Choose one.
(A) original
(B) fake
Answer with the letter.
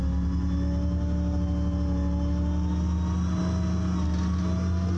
A